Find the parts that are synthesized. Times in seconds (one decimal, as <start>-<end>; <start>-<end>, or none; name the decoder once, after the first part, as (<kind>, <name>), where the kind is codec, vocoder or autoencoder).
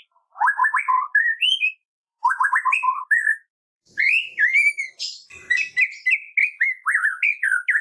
0.6-4.0 (vocoder, BigVGAN v2)